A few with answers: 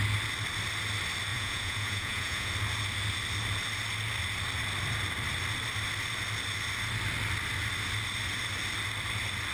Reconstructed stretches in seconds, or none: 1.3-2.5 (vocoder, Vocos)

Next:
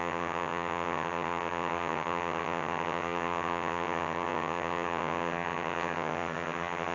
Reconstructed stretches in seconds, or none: 0.0-6.9 (vocoder, HiFi-GAN)